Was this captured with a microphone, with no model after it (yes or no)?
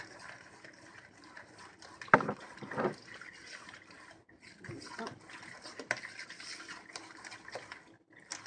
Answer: yes